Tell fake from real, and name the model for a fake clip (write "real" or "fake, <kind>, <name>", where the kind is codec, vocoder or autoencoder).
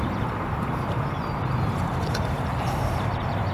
fake, vocoder, BigVGAN v2